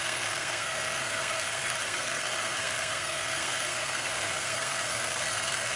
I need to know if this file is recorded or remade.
remade